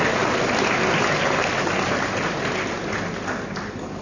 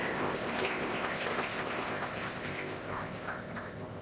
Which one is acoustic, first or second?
first